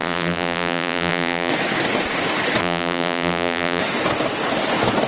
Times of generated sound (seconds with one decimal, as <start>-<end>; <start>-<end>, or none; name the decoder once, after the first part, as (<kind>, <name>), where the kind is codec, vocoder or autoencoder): 0.0-1.5 (vocoder, BigVGAN v2); 2.6-3.8